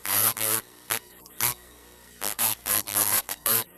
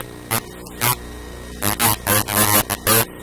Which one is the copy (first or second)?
first